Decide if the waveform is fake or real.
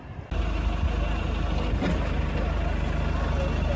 real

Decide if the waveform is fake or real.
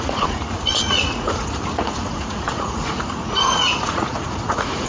fake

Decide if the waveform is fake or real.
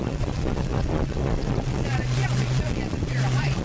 fake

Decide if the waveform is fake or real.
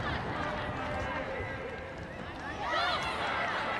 real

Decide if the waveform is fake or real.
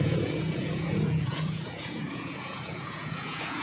fake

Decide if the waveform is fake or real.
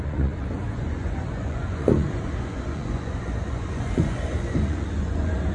fake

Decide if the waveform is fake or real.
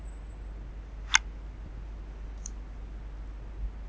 real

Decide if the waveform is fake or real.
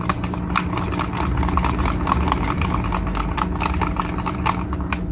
real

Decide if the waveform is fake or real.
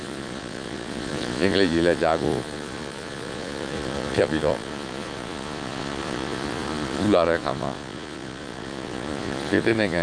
fake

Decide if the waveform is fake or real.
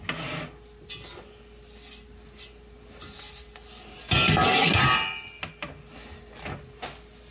real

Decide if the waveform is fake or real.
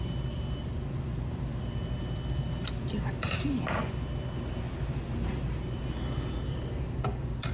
real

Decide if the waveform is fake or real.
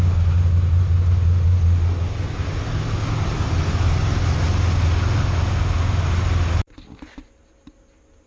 real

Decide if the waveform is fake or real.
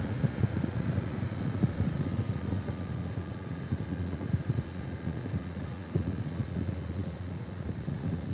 fake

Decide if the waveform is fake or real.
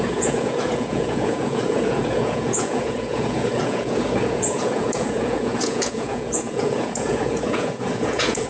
fake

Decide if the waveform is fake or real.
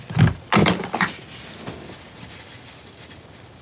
real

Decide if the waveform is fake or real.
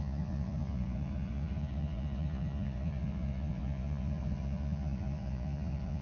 fake